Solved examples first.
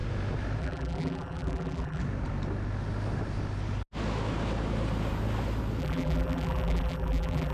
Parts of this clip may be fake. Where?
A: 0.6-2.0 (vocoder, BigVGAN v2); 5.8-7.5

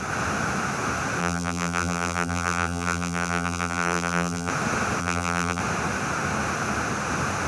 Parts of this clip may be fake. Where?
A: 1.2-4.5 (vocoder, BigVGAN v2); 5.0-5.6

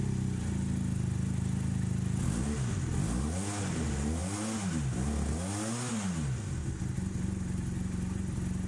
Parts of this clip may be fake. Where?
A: none